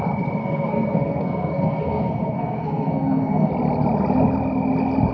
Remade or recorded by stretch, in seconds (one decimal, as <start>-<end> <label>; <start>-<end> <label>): 0.0-0.4 recorded; 0.4-3.5 remade; 3.5-5.1 recorded